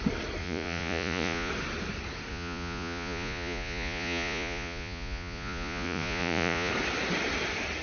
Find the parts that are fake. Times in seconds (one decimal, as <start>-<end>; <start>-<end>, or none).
0.4-1.5; 2.3-6.7